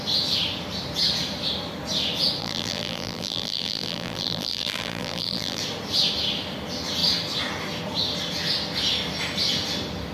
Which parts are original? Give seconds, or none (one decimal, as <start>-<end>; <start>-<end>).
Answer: 0.0-2.4; 5.6-10.1